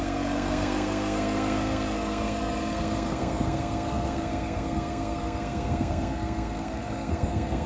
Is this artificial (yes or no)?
yes